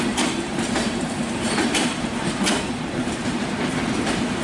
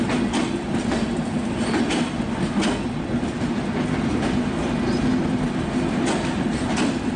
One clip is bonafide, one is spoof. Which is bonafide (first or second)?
second